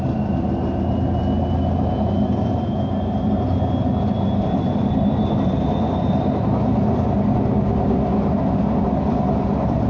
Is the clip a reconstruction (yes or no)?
no